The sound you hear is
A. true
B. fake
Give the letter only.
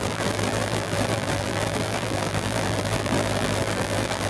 B